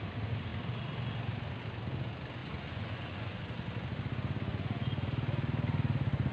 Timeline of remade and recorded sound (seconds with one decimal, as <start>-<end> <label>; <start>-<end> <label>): 0.0-2.4 recorded; 2.4-3.4 remade; 3.4-4.5 recorded; 4.5-5.1 remade; 5.1-6.3 recorded